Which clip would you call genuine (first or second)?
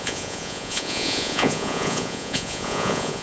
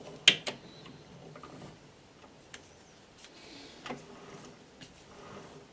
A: second